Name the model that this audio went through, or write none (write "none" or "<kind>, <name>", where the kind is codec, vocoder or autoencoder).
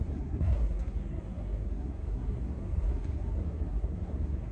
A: codec, SNAC